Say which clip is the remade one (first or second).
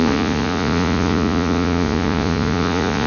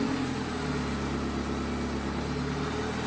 first